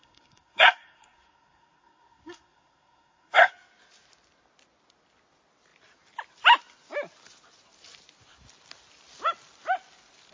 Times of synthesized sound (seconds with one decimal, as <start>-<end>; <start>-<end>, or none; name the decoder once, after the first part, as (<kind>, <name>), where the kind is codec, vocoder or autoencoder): 0.0-3.5 (codec, SNAC)